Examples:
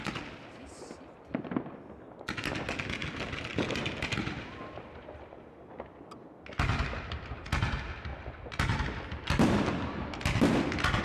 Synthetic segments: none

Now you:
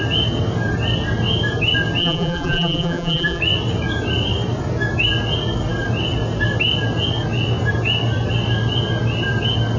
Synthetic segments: 2.0-3.4

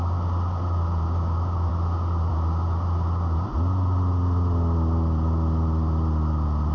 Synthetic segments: none

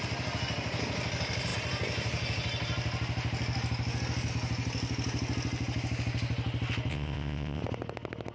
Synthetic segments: 6.9-7.6

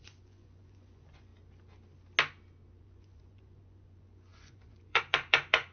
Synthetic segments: 0.0-1.3; 2.8-5.7